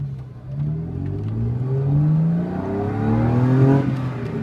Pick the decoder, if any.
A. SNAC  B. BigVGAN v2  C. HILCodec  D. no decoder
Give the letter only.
D